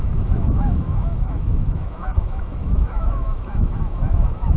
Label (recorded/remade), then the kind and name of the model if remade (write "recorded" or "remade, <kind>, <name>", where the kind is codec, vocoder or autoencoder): remade, autoencoder, DAC-VAE